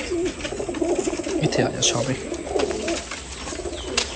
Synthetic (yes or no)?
no